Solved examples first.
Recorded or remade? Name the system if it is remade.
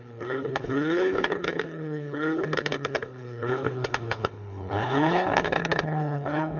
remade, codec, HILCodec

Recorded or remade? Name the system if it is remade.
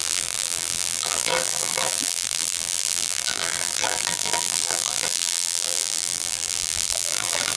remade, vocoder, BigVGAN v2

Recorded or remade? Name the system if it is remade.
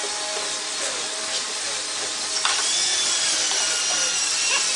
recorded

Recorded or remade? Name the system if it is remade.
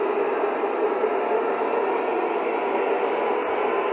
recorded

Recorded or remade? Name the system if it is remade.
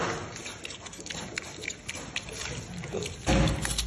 recorded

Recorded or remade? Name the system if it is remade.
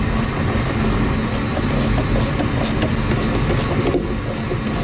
recorded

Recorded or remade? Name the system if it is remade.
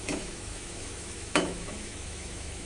remade, autoencoder, DAC-VAE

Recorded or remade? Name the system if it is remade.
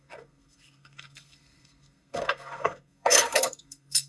remade, codec, SNAC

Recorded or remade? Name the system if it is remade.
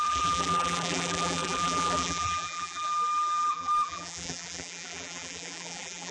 remade, vocoder, BigVGAN v2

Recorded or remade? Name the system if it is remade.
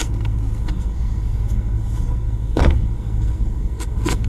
remade, codec, SNAC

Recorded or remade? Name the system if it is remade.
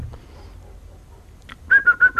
recorded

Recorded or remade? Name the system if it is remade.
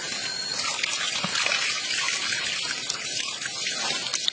recorded